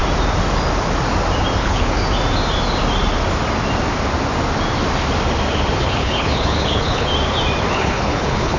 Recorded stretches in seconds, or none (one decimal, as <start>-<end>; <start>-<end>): 0.0-1.6; 2.0-5.8; 7.1-7.7